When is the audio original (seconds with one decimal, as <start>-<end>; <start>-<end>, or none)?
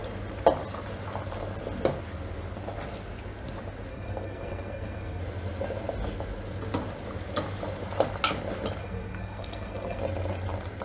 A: 0.0-3.9; 5.2-8.8; 10.0-10.8